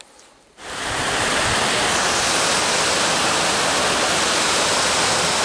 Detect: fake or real real